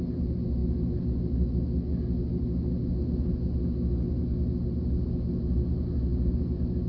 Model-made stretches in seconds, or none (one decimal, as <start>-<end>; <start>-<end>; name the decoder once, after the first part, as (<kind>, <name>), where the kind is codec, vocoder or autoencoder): none